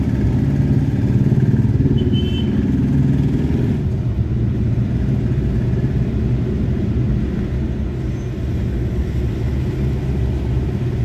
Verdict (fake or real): real